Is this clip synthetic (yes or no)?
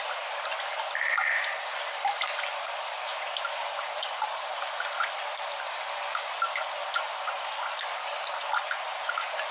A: no